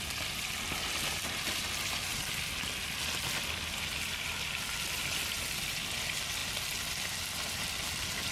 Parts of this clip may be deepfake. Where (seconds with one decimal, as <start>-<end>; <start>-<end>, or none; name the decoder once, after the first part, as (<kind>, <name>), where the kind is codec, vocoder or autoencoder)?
none